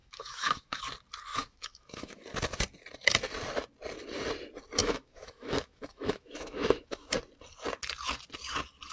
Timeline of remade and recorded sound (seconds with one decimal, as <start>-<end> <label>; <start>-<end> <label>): 0.0-0.8 remade; 0.8-1.3 recorded; 1.3-2.2 remade; 2.2-4.8 recorded; 4.8-7.1 remade; 7.1-8.9 recorded